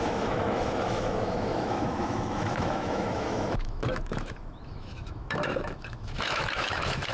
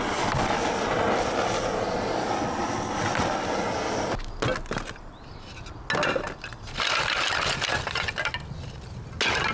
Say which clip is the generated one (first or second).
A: first